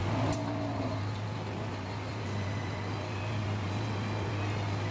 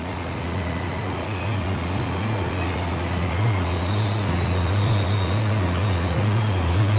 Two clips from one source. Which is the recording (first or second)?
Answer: first